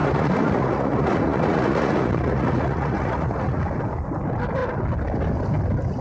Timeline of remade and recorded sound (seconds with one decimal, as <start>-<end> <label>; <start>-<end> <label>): 0.0-3.6 remade; 3.6-6.0 recorded